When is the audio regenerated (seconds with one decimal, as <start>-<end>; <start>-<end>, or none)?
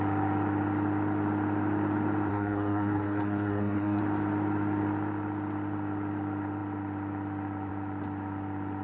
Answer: 2.3-4.0